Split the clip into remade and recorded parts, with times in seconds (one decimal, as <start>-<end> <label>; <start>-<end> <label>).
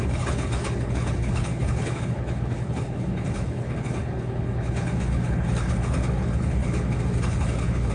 0.0-7.9 remade